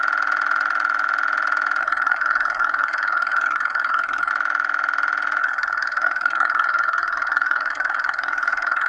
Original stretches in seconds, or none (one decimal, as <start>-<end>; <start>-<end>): 0.0-1.8; 4.3-5.4